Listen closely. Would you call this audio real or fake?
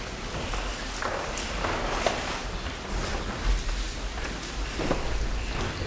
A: real